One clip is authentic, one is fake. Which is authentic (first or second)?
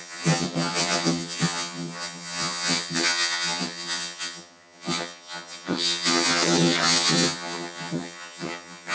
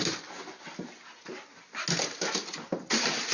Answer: second